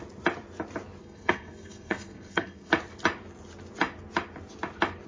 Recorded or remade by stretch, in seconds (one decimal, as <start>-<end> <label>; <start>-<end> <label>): 0.0-1.0 recorded; 1.0-2.7 remade; 2.7-5.1 recorded